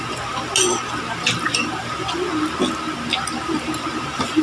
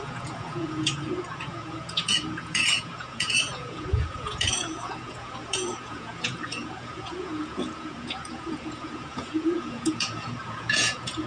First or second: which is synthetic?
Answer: second